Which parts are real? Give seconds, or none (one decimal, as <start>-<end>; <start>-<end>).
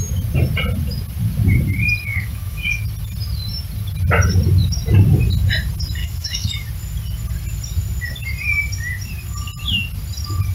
0.0-2.1; 2.8-6.0; 6.7-10.5